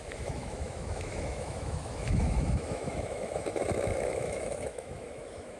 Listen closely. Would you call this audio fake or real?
fake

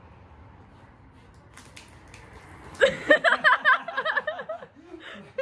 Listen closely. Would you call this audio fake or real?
real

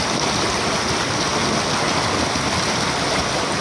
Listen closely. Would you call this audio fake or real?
real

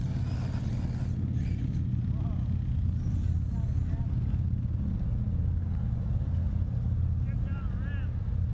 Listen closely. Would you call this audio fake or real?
real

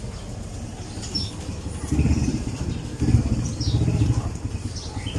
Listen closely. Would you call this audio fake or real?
real